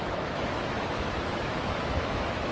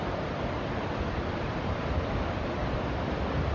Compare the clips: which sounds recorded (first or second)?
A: second